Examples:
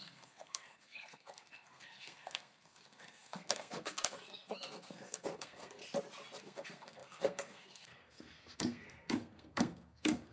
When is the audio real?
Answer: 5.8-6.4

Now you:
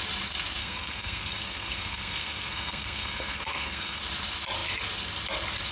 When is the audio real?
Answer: 0.0-0.6; 4.0-5.7

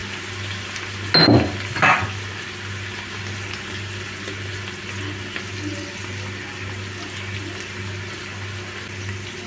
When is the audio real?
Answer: 0.0-9.5

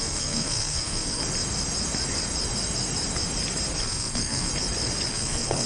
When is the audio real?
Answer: 1.2-3.8; 4.5-5.1

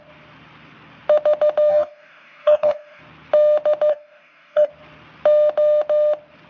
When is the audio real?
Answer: 0.0-1.7; 3.0-3.9; 4.7-6.5

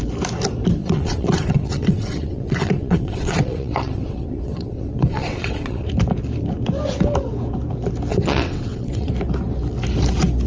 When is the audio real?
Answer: 0.0-0.8; 5.9-8.1; 9.1-10.5

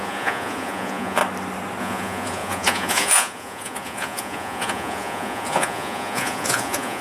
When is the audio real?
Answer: 1.2-1.8